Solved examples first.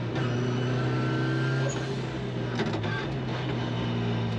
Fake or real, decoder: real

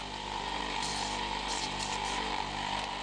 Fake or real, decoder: fake, vocoder, BigVGAN v2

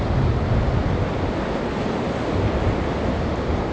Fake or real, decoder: real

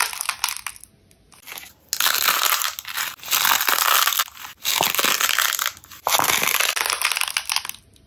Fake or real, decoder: real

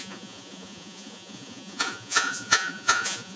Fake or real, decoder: fake, vocoder, Vocos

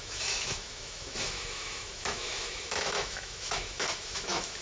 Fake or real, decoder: fake, autoencoder, DAC-VAE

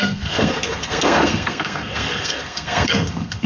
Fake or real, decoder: fake, codec, SNAC